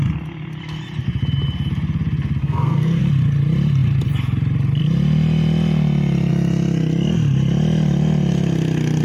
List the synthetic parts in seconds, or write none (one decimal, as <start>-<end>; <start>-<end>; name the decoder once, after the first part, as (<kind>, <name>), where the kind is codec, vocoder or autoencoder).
2.4-3.0 (codec, SNAC)